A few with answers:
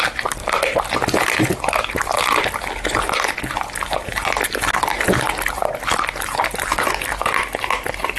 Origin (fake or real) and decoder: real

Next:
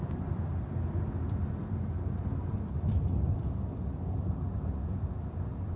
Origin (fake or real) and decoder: real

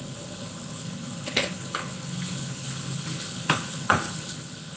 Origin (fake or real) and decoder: fake, codec, HILCodec